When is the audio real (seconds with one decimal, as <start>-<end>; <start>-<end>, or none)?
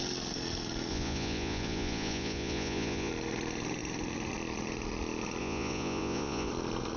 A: 0.0-0.9; 3.1-5.4; 6.5-7.0